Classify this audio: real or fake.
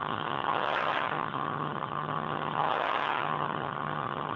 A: fake